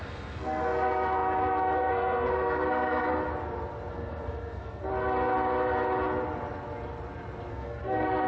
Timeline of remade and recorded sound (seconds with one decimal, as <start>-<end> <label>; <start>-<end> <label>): 0.0-3.2 remade; 3.2-3.9 recorded; 3.9-4.9 remade; 4.9-7.5 recorded; 7.5-8.3 remade

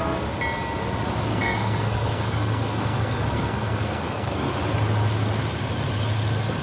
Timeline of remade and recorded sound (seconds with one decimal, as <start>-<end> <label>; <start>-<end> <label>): 0.0-1.3 recorded; 1.3-4.5 remade; 4.5-6.6 recorded

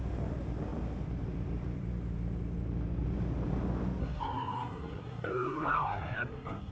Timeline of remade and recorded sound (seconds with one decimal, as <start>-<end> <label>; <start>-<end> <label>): 0.0-4.0 recorded; 4.0-6.7 remade

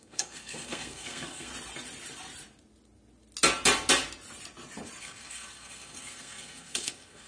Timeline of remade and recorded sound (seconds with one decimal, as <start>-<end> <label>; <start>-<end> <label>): 0.0-1.5 remade; 1.5-5.0 recorded; 5.0-7.3 remade

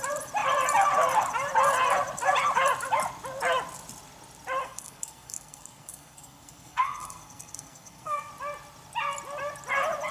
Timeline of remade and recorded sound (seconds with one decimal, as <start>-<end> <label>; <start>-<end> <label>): 0.0-4.6 recorded; 4.6-8.3 remade; 8.3-10.1 recorded

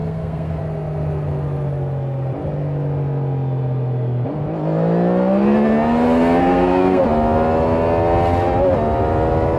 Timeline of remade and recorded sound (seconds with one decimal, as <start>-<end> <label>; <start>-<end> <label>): 0.0-0.6 remade; 0.6-6.4 recorded; 6.4-7.0 remade; 7.0-9.6 recorded

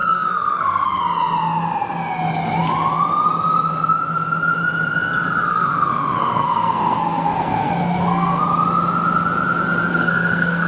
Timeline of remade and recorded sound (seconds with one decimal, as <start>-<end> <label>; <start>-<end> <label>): 0.0-1.0 remade; 1.0-5.5 recorded; 5.5-8.4 remade; 8.4-9.9 recorded; 9.9-10.7 remade